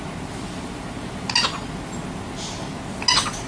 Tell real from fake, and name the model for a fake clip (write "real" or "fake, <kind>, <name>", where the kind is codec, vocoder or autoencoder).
real